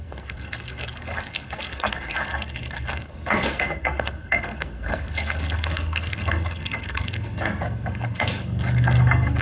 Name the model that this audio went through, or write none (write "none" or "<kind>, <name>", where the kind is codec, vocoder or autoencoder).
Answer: codec, SNAC